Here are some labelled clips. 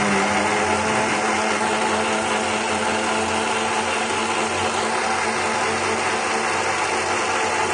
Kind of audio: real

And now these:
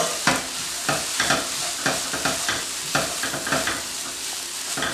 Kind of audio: real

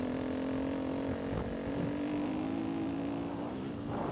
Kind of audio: real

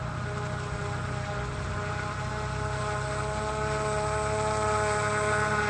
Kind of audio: real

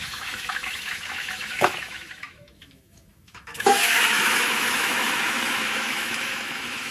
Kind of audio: fake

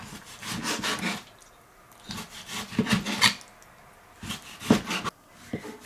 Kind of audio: real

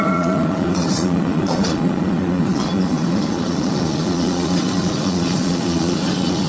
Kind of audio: fake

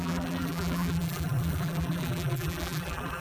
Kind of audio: fake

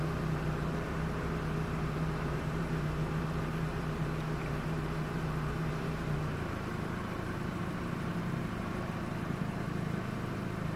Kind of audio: fake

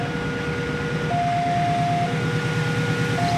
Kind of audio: real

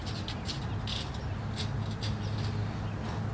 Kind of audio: real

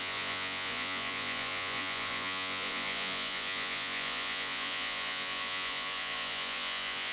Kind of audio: fake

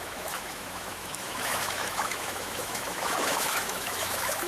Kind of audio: fake